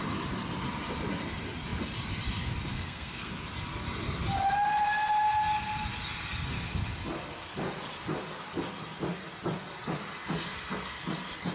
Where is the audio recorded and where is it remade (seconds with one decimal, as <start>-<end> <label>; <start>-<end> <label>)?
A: 0.0-2.7 recorded; 2.7-3.3 remade; 3.3-10.5 recorded; 10.5-11.0 remade; 11.0-11.5 recorded